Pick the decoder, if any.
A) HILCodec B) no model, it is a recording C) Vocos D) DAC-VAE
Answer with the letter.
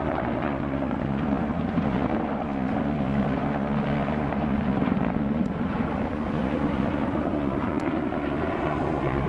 C